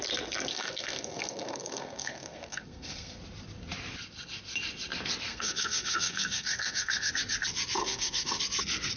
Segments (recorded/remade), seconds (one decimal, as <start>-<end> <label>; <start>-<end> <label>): 0.0-0.5 recorded; 0.5-3.2 remade; 3.2-5.3 recorded; 5.3-7.1 remade; 7.1-7.8 recorded; 7.8-8.4 remade; 8.4-9.0 recorded